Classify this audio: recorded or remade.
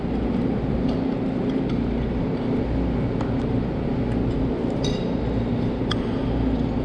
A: recorded